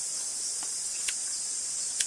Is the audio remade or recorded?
recorded